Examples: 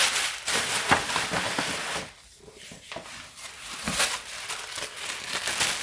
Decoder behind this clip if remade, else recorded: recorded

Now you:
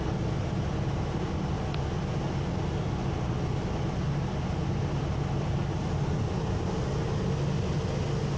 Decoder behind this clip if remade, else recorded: recorded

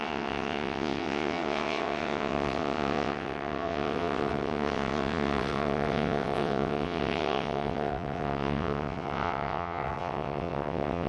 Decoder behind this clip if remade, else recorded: remade, vocoder, WaveNeXt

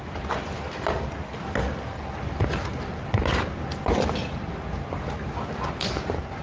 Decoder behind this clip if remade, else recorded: recorded